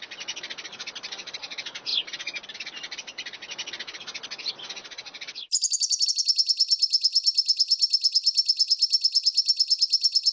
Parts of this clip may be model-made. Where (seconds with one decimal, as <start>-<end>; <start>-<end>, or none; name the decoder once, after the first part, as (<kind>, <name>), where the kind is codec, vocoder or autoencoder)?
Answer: none